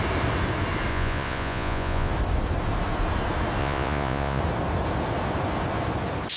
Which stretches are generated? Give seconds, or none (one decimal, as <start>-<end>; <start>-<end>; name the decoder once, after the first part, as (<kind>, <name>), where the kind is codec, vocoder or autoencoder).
0.9-2.1 (vocoder, Vocos); 3.6-4.4